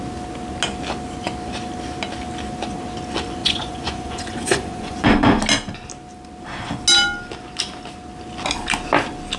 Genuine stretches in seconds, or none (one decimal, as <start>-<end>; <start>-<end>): 0.0-3.4; 5.4-9.4